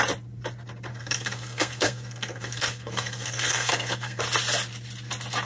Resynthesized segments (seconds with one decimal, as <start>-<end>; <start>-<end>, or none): 0.9-4.2